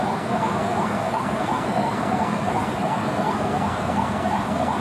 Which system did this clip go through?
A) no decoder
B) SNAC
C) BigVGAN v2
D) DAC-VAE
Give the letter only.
B